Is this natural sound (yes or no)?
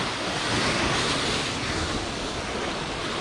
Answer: yes